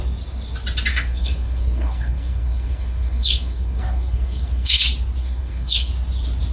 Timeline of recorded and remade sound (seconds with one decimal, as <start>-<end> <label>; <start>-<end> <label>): 0.0-0.9 recorded; 0.9-4.8 remade; 4.8-5.2 recorded; 5.2-5.9 remade; 5.9-6.5 recorded